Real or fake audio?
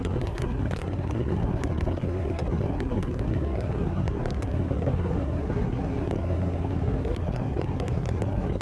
fake